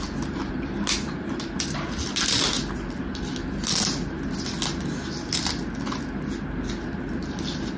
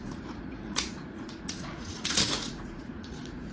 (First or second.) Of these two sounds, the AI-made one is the second